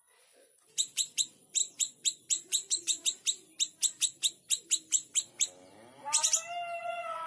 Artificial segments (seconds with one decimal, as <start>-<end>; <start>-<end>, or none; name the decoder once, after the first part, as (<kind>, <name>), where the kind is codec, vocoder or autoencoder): 0.0-3.0 (vocoder, Vocos); 6.8-7.3